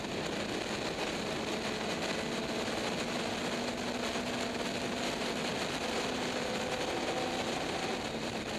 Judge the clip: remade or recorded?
recorded